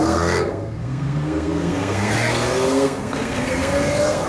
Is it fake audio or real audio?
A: fake